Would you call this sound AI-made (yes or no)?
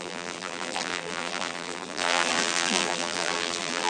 yes